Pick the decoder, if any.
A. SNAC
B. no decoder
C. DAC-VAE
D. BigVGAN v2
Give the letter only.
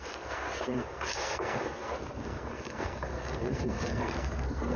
A